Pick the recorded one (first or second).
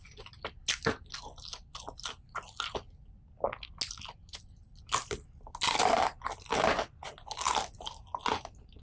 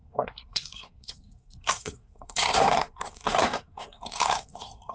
first